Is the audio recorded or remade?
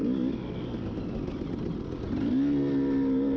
recorded